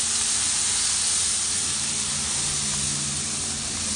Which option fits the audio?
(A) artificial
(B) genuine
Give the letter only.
B